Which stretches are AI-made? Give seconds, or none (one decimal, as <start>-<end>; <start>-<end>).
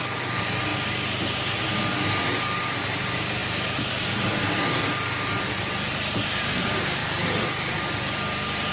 none